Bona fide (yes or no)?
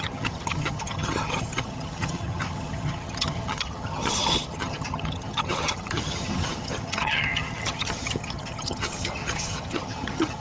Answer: no